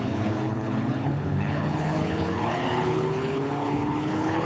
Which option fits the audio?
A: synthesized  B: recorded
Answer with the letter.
A